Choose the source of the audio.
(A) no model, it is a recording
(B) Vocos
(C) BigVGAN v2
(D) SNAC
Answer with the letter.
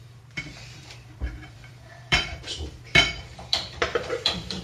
C